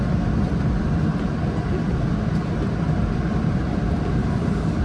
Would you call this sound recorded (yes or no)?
yes